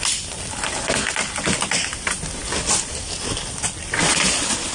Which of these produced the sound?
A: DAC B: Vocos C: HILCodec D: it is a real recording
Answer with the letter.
D